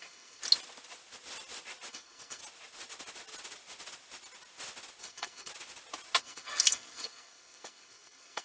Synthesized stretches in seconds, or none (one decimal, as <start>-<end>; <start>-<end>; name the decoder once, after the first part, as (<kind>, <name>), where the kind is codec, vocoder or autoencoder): 0.0-0.4 (codec, SNAC); 1.9-2.4; 5.0-5.5; 6.2-8.4